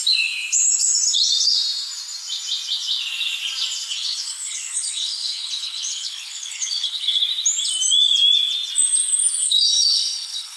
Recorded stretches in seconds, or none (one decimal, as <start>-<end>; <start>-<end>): 0.0-3.9; 7.2-9.4